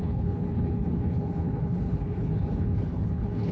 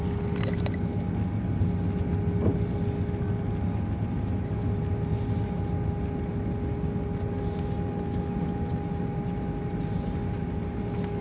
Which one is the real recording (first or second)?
second